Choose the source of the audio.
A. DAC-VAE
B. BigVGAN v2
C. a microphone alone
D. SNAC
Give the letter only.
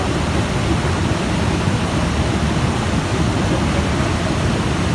C